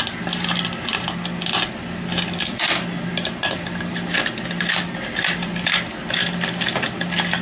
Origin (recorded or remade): recorded